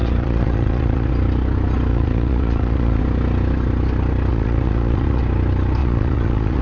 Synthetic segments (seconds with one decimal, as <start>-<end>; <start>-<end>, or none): 0.0-1.1; 1.9-3.0; 4.3-5.2; 5.8-6.6